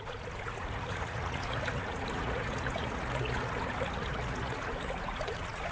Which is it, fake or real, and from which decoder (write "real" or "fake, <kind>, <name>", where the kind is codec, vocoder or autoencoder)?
fake, vocoder, Vocos